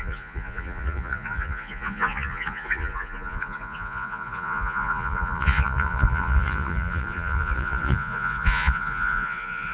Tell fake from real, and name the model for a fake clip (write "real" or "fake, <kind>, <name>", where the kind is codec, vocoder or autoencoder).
fake, vocoder, Vocos